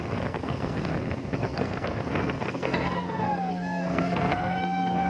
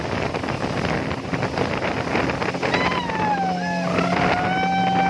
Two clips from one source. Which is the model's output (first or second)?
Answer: first